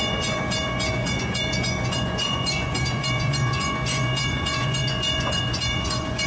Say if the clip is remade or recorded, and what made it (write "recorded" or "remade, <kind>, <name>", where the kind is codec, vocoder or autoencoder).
remade, vocoder, Vocos